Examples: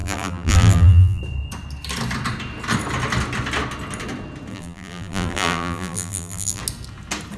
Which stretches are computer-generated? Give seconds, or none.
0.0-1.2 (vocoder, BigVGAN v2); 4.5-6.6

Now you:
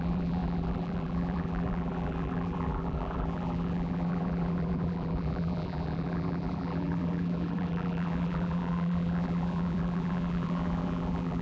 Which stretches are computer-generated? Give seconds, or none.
0.0-11.4 (vocoder, BigVGAN v2)

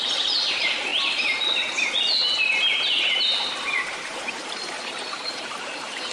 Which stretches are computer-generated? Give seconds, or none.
2.2-6.1 (vocoder, BigVGAN v2)

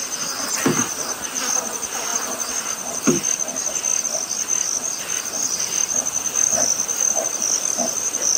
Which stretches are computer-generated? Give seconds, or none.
5.4-8.4 (vocoder, BigVGAN v2)

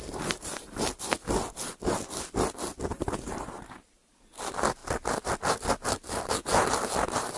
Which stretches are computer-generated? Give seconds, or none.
0.0-1.0 (vocoder, BigVGAN v2); 2.9-4.1

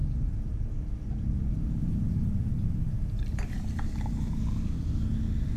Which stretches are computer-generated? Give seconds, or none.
0.0-0.7 (vocoder, BigVGAN v2); 1.8-4.6